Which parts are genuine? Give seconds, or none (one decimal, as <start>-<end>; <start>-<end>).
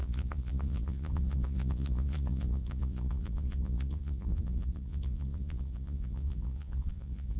none